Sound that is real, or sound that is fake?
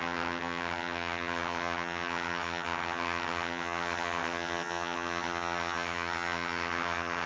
fake